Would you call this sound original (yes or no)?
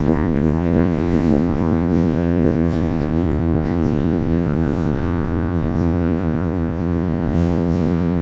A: no